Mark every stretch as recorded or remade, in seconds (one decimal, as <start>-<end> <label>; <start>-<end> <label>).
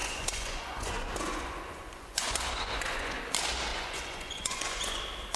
0.0-3.2 remade; 3.2-3.7 recorded; 3.7-5.0 remade; 5.0-5.4 recorded